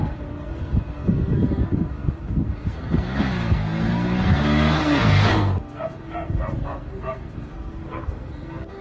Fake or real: fake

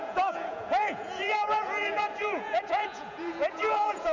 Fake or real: fake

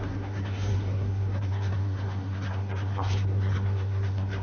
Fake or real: fake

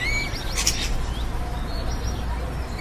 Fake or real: real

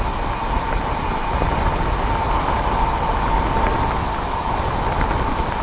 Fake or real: real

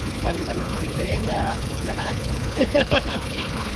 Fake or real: fake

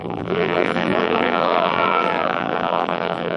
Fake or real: fake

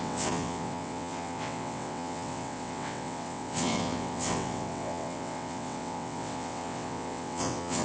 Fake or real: fake